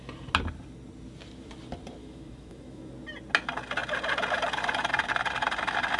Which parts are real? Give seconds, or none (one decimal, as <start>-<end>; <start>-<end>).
0.0-2.0; 2.9-6.0